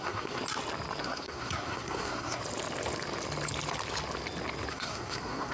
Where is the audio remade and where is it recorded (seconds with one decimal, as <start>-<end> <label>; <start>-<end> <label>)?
0.0-0.4 remade; 0.4-1.0 recorded; 1.0-2.4 remade; 2.4-4.7 recorded; 4.7-5.5 remade